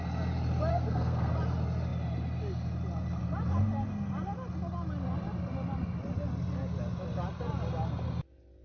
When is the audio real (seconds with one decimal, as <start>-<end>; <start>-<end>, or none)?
0.0-0.7; 1.3-8.6